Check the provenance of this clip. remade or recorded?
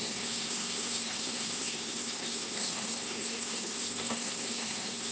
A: remade